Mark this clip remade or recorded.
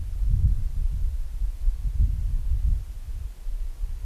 recorded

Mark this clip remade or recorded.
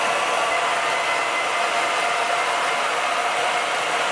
recorded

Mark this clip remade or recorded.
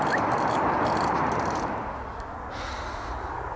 recorded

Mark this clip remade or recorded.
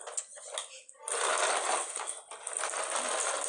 recorded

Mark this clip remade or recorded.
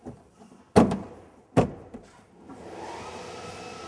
recorded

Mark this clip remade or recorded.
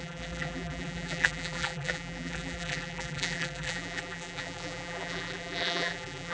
remade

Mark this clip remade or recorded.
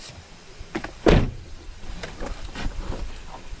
remade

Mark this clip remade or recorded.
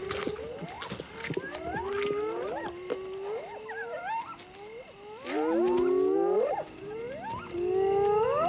recorded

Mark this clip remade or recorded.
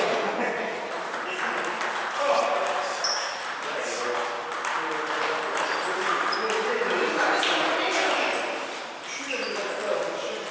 recorded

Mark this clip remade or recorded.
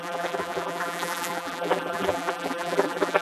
remade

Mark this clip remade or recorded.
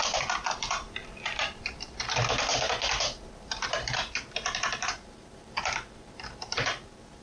remade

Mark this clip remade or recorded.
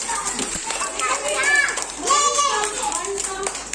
remade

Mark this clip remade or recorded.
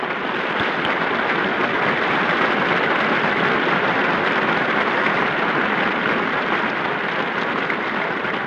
recorded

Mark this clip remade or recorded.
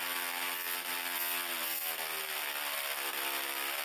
recorded